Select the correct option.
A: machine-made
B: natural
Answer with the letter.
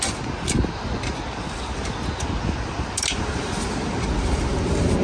B